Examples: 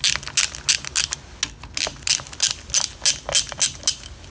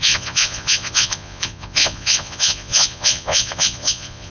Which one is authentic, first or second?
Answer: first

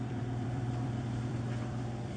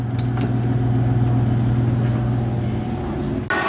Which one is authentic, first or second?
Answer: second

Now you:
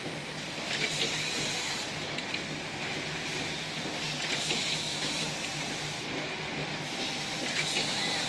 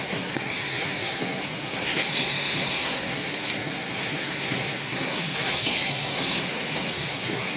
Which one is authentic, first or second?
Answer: first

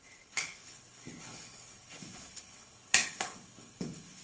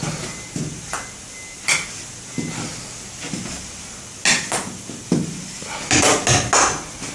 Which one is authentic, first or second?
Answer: second